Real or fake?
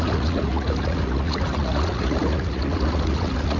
fake